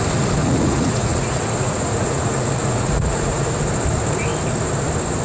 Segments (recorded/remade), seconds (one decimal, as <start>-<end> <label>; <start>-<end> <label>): 0.0-0.4 recorded; 0.4-3.5 remade; 3.5-5.2 recorded